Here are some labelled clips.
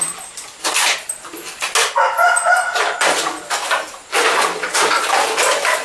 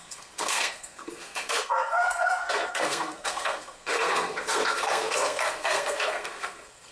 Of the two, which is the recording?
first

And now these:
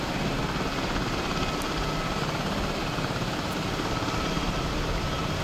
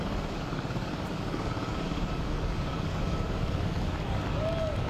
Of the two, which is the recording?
first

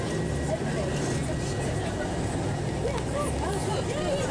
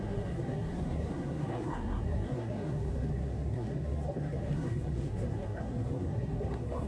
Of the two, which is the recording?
first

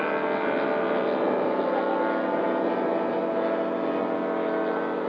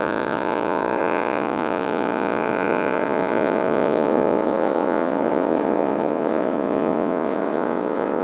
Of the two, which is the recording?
first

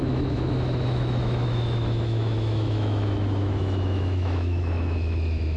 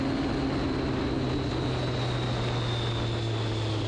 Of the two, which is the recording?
second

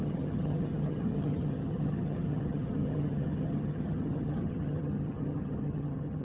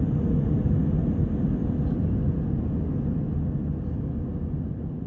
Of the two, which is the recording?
second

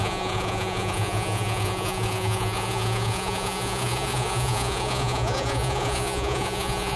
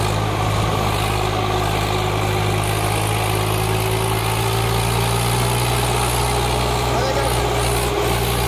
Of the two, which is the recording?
second